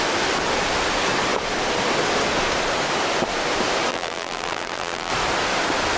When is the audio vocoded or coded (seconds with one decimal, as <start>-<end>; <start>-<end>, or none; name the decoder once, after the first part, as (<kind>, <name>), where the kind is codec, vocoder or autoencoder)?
3.9-5.1 (vocoder, BigVGAN v2)